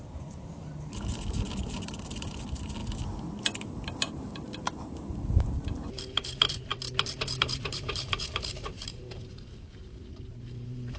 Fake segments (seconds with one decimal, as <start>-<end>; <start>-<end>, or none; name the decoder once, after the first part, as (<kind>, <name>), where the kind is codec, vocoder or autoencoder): 0.0-2.8 (vocoder, BigVGAN v2); 3.4-6.7; 7.4-11.0